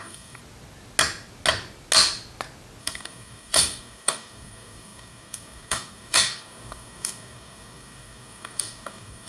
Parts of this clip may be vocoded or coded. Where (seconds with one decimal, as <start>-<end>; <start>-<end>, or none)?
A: 0.0-0.4; 2.8-9.3